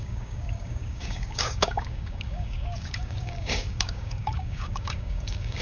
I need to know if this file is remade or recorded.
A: remade